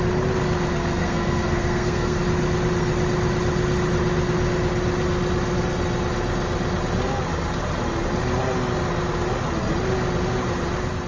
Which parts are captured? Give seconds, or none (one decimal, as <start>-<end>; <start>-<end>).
0.0-1.0; 2.2-11.1